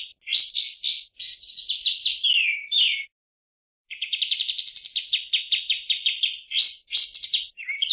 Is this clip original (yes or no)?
yes